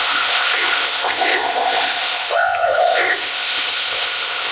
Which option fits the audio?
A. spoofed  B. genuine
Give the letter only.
A